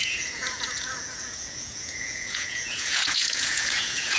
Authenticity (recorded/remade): remade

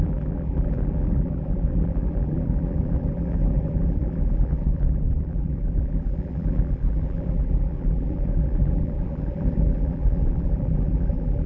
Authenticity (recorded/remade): remade